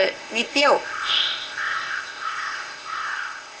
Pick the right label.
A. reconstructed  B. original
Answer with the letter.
A